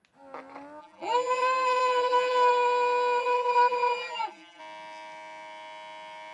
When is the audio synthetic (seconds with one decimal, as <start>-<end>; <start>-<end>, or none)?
0.8-2.5; 3.2-4.6